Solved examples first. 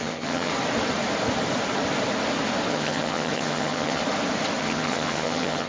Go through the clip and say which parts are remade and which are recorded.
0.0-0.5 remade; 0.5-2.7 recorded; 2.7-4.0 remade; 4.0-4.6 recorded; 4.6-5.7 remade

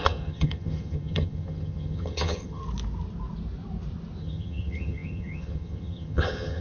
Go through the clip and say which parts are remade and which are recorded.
0.0-2.6 remade; 2.6-4.2 recorded; 4.2-6.6 remade